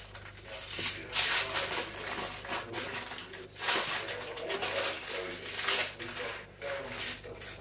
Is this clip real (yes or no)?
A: yes